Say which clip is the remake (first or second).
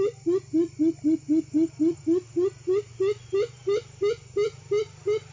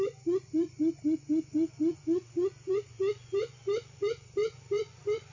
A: second